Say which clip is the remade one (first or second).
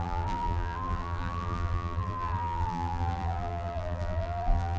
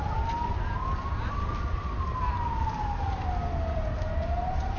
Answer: first